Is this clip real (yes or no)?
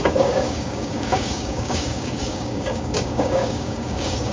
no